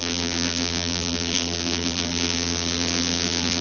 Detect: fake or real fake